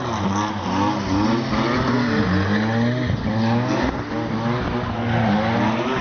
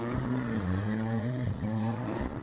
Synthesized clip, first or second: second